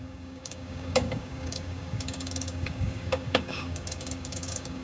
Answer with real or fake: fake